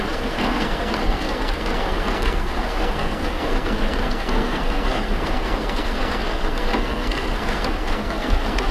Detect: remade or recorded remade